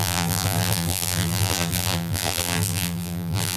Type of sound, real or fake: fake